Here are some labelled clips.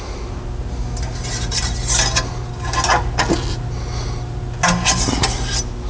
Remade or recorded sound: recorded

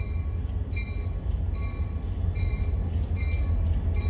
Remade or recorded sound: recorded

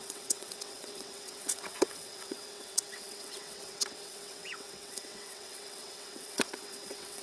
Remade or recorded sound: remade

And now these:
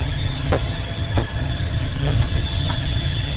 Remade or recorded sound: remade